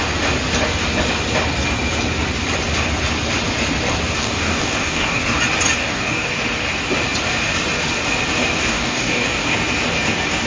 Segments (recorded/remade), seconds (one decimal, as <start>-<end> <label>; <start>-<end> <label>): 0.0-4.2 recorded; 4.2-5.2 remade; 5.2-5.8 recorded; 5.8-6.3 remade; 6.3-8.6 recorded; 8.6-9.6 remade; 9.6-10.5 recorded